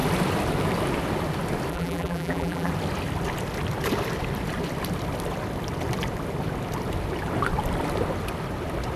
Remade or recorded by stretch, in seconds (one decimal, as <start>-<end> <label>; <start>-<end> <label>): 0.0-1.7 recorded; 1.7-2.7 remade; 2.7-9.0 recorded